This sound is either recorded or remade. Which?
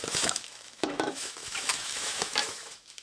remade